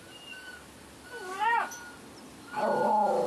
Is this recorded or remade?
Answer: recorded